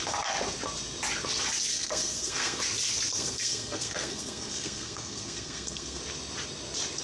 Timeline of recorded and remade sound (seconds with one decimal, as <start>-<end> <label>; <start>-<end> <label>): 0.0-1.7 recorded; 1.7-2.6 remade; 2.6-3.1 recorded; 3.1-6.0 remade; 6.0-7.0 recorded

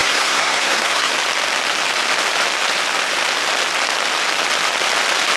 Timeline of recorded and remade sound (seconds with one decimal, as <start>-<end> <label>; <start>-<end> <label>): 0.0-1.1 remade; 1.1-5.4 recorded

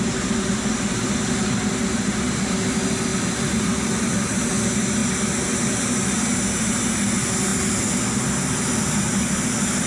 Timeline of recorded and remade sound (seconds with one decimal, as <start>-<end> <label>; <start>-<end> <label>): 0.0-9.9 recorded

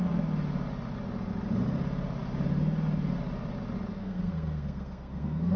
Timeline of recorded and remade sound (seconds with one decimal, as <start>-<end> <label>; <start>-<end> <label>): 0.0-4.0 recorded; 4.0-5.6 remade